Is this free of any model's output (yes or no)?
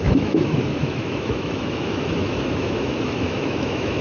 no